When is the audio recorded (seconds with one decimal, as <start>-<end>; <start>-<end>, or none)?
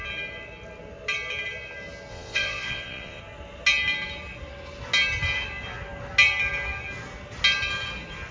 0.0-2.1; 3.2-8.3